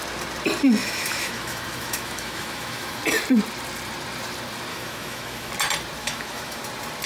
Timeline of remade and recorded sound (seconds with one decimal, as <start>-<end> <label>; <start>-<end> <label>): 0.0-0.8 recorded; 0.8-3.0 remade; 3.0-4.7 recorded; 4.7-5.5 remade; 5.5-6.0 recorded; 6.0-6.6 remade; 6.6-7.1 recorded